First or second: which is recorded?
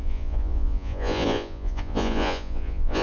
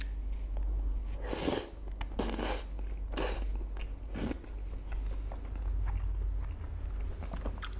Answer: second